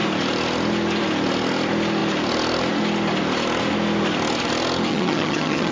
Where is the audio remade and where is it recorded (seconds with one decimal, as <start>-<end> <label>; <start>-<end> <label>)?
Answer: 0.0-4.9 recorded; 4.9-5.7 remade